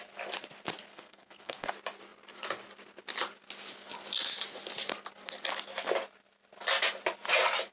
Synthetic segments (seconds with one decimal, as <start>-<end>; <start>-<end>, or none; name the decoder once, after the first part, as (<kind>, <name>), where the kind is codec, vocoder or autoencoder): 0.9-1.7 (codec, SNAC)